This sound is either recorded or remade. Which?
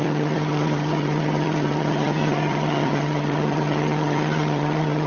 remade